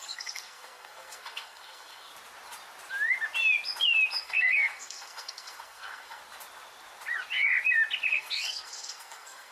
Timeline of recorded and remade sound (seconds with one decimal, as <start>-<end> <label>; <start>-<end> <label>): 0.0-2.1 remade; 2.1-4.2 recorded; 4.2-6.2 remade; 6.2-8.1 recorded; 8.1-9.5 remade